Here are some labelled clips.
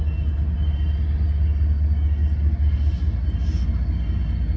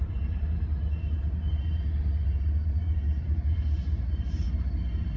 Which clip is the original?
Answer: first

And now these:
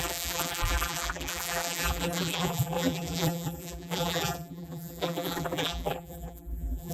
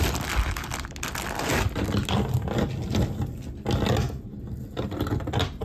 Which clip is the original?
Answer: second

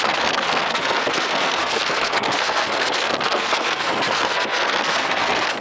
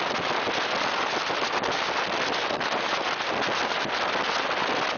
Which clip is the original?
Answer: second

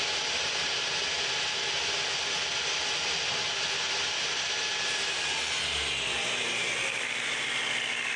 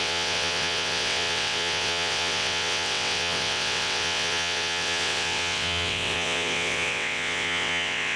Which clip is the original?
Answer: first